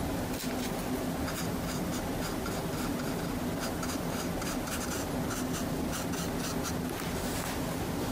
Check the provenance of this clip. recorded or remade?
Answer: recorded